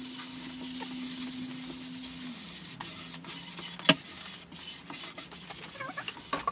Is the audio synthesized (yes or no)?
no